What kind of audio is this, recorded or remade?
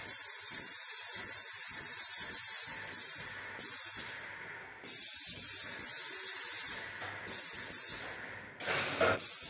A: recorded